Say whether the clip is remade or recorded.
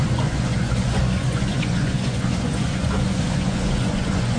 remade